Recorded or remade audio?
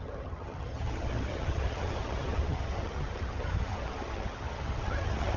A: remade